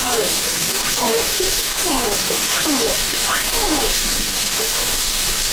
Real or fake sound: fake